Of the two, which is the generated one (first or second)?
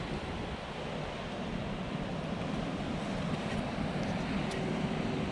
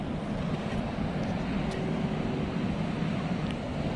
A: first